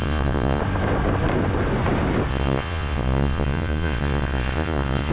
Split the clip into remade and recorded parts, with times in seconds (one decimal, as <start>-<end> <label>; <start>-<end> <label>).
0.0-0.6 remade; 0.6-2.3 recorded; 2.3-5.1 remade